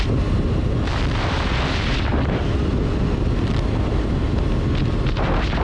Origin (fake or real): real